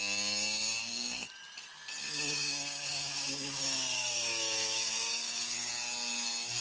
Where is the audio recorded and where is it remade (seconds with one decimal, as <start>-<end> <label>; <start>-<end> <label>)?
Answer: 0.0-0.8 recorded; 0.8-1.3 remade; 1.3-2.0 recorded; 2.0-5.7 remade; 5.7-6.6 recorded

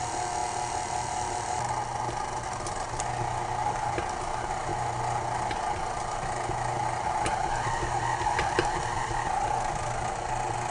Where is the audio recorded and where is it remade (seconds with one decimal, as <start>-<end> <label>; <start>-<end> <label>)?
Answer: 0.0-10.7 recorded

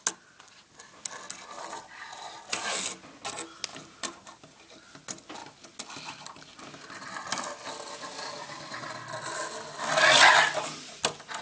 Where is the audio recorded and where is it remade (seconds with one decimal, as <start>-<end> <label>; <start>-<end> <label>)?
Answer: 0.0-3.7 recorded; 3.7-4.8 remade; 4.8-11.4 recorded

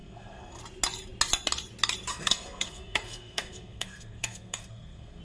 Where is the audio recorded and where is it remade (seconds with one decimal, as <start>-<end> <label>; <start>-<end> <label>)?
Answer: 0.0-0.6 remade; 0.6-2.1 recorded; 2.1-5.2 remade

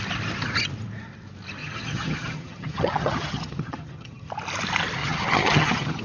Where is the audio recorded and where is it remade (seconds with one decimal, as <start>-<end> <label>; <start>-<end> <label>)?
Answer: 0.0-1.6 recorded; 1.6-4.3 remade; 4.3-5.0 recorded; 5.0-6.0 remade

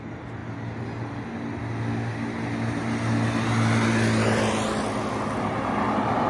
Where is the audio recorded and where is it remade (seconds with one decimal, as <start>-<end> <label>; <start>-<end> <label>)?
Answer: 0.0-6.3 recorded

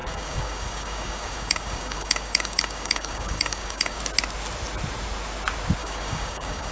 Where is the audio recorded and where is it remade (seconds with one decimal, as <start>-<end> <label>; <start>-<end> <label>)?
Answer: 0.0-4.0 remade; 4.0-5.8 recorded; 5.8-6.7 remade